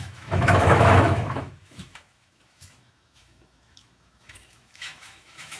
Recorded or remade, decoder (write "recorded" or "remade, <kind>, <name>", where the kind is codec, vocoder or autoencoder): remade, autoencoder, DAC-VAE